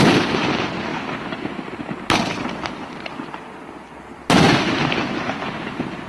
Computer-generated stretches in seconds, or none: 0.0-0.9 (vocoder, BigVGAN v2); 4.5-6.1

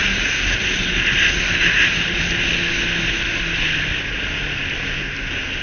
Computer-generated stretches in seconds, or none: none

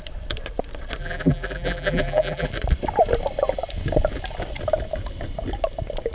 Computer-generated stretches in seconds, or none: 1.0-2.5 (vocoder, BigVGAN v2)

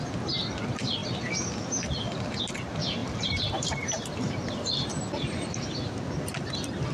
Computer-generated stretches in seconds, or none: 3.0-4.9 (vocoder, BigVGAN v2)

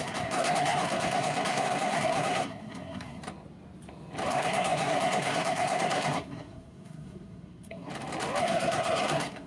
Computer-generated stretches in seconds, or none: 0.0-3.2 (codec, SNAC); 4.3-7.9; 8.4-9.5

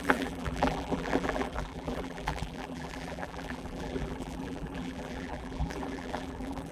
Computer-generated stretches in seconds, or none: 0.0-6.7 (vocoder, BigVGAN v2)

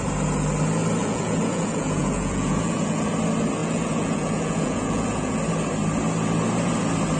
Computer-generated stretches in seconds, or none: 1.0-3.1 (vocoder, Vocos); 3.6-5.4

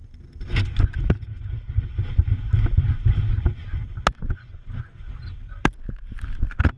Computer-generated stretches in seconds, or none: 4.3-5.2 (vocoder, Vocos)